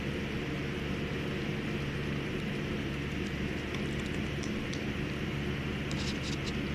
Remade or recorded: recorded